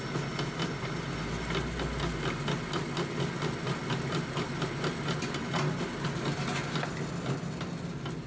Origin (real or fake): real